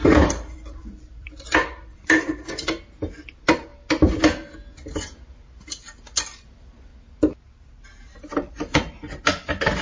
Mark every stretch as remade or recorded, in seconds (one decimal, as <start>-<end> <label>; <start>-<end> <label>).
0.0-3.7 remade; 3.7-6.2 recorded; 6.2-6.9 remade; 6.9-8.3 recorded; 8.3-8.8 remade; 8.8-9.3 recorded; 9.3-9.8 remade